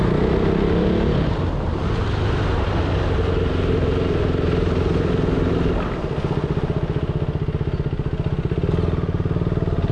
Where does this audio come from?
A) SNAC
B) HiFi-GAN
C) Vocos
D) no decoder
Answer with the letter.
D